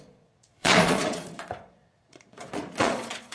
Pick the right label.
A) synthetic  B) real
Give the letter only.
A